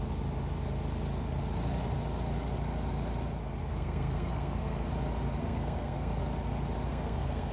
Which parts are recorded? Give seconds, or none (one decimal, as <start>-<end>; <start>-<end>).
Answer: 0.0-3.6; 4.9-5.4; 6.2-6.9